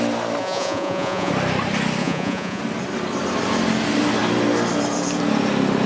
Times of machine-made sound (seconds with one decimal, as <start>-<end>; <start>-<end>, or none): 0.4-1.3; 2.0-2.6